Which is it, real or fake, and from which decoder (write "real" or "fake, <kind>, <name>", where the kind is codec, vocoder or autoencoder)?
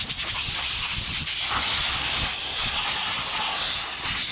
real